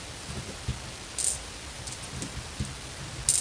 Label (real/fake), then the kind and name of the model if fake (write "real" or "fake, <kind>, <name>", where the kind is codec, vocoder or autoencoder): real